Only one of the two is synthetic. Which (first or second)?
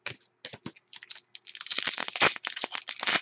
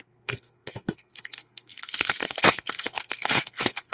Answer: second